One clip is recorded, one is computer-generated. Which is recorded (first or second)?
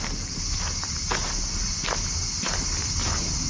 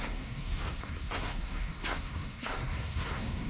first